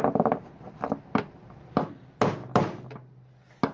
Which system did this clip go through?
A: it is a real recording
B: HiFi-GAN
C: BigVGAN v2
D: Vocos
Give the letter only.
A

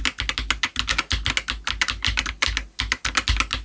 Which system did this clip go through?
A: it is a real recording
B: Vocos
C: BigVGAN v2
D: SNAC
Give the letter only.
A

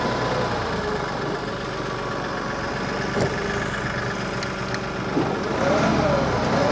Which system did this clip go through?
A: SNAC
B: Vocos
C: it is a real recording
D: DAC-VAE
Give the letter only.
C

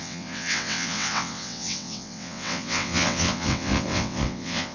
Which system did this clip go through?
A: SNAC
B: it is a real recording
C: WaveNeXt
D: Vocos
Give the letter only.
C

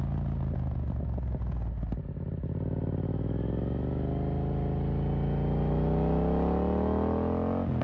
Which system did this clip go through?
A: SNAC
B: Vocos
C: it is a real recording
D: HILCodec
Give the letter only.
C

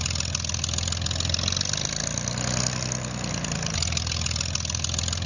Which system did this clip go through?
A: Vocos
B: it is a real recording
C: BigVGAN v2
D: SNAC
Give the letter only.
B